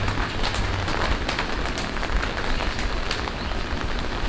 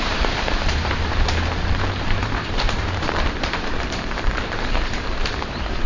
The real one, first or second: first